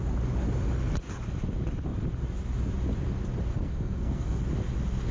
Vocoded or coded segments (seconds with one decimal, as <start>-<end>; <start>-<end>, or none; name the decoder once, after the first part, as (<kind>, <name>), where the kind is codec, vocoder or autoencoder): 3.5-4.4 (codec, SNAC)

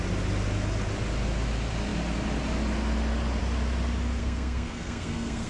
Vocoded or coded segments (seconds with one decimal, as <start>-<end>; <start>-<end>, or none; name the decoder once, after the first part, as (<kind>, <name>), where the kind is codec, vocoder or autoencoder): 4.2-5.5 (codec, SNAC)